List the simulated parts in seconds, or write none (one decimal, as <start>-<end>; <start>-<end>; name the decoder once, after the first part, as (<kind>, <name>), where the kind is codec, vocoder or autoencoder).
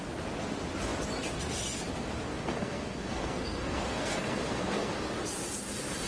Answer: 2.3-4.9 (codec, SNAC)